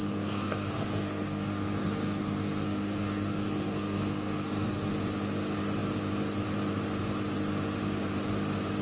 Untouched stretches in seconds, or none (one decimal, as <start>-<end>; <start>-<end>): 4.9-8.8